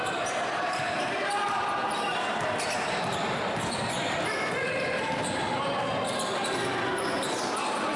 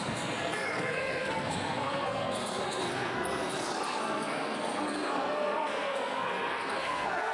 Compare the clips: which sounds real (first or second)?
first